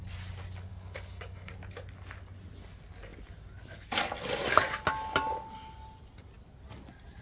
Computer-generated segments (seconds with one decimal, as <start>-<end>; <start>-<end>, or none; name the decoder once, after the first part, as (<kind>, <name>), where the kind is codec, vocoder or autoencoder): 0.7-1.5 (codec, DAC)